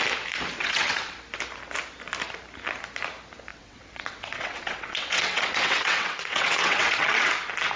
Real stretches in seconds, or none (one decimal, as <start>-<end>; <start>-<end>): 0.0-0.6; 1.2-3.5; 7.3-7.8